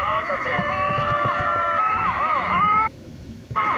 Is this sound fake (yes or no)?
yes